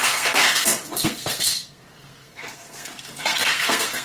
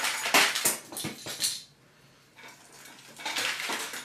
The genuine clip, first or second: second